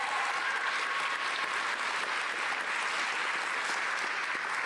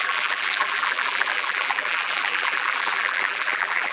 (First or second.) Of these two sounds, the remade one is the second